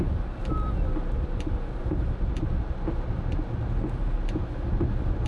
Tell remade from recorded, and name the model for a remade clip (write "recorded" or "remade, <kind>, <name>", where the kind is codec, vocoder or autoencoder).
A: recorded